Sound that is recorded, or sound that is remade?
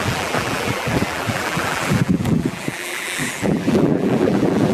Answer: remade